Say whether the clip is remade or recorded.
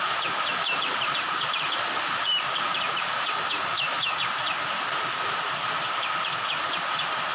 remade